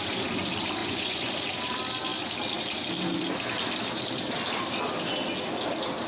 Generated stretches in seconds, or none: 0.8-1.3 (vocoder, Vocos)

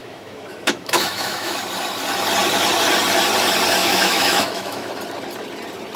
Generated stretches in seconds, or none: 0.0-1.6 (autoencoder, DAC-VAE); 3.8-4.9

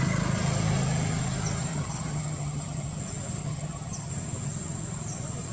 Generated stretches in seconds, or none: 1.7-3.0 (vocoder, HiFi-GAN); 3.4-4.1

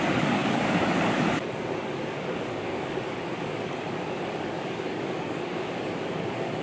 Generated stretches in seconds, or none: 0.0-6.6 (codec, DAC)